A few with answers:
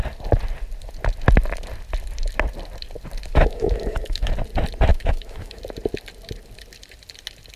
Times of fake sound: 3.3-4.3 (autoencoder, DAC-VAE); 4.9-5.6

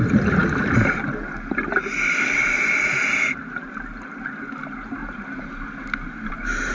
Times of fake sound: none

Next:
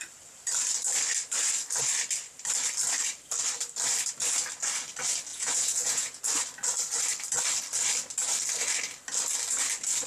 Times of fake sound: 5.3-6.2 (vocoder, Vocos)

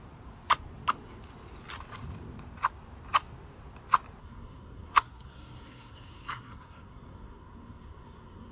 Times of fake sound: 4.2-8.5 (codec, SNAC)

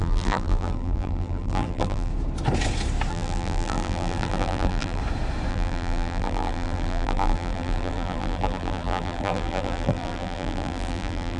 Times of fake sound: 0.0-2.1 (vocoder, BigVGAN v2); 3.1-5.0; 5.5-11.4

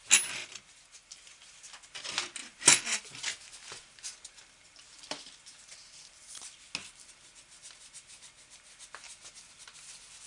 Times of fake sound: 0.4-1.3 (vocoder, BigVGAN v2); 2.4-3.0